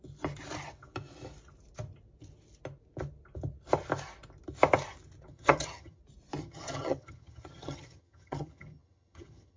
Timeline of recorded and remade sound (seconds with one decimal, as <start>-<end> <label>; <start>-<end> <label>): 0.0-5.3 recorded; 5.3-6.0 remade; 6.0-6.4 recorded; 6.4-9.6 remade

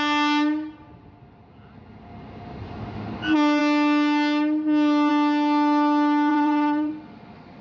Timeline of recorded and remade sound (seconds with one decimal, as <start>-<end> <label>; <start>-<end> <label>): 0.0-6.3 recorded; 6.3-6.9 remade; 6.9-7.6 recorded

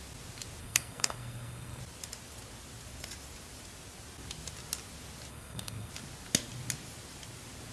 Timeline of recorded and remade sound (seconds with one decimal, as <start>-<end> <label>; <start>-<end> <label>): 0.0-0.6 recorded; 0.6-1.8 remade; 1.8-5.3 recorded; 5.3-5.9 remade; 5.9-7.7 recorded

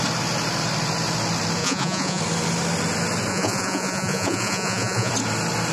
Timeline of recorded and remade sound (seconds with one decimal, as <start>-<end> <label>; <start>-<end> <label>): 0.0-1.6 recorded; 1.6-2.2 remade; 2.2-3.3 recorded; 3.3-5.1 remade; 5.1-5.7 recorded